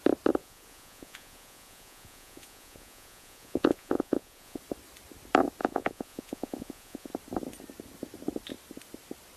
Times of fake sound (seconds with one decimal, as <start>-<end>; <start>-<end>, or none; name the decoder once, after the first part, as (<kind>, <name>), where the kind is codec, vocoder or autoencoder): 0.4-4.6 (vocoder, Vocos); 5.6-7.1